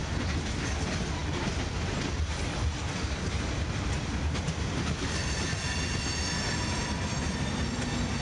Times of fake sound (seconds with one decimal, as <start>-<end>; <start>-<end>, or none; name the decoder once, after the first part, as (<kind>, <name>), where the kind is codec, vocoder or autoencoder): none